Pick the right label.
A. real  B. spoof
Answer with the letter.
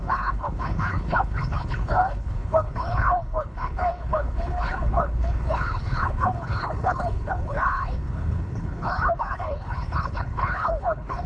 B